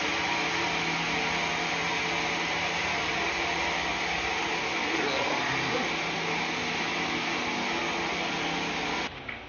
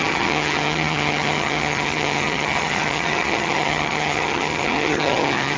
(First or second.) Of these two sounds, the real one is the first